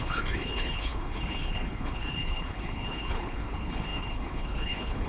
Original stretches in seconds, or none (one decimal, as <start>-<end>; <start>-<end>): none